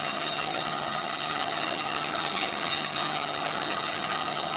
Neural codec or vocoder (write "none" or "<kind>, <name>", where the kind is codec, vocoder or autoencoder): vocoder, HiFi-GAN